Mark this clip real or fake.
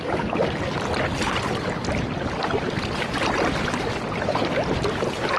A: real